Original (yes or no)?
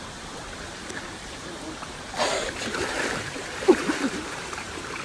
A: no